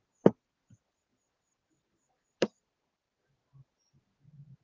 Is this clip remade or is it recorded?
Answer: recorded